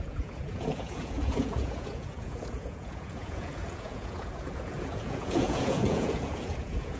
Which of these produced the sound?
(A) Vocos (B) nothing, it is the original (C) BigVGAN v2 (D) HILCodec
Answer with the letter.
A